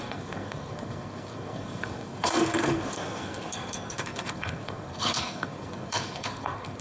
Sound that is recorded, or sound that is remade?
remade